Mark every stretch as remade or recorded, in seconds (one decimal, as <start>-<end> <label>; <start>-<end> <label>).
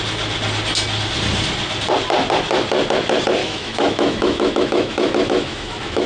0.0-3.4 recorded; 3.4-6.1 remade